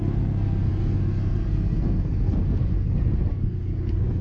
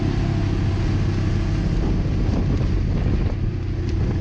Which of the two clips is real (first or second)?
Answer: second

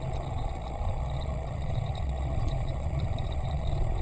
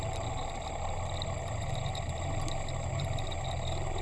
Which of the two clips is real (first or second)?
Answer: second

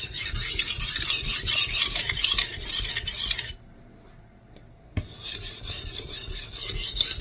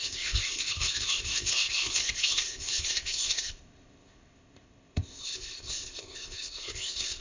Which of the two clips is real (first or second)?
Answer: first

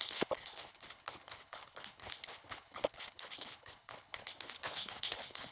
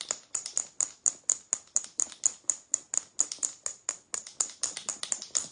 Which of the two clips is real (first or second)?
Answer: second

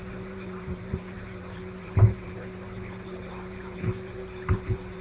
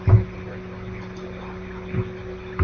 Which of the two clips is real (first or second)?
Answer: second